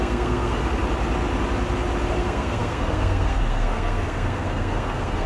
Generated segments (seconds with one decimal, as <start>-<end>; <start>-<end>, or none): 0.0-0.6; 2.1-5.3